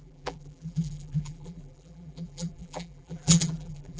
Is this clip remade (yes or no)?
yes